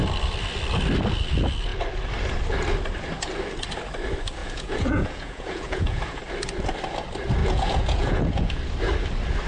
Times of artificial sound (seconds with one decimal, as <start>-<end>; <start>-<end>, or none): 4.4-6.2; 7.4-8.6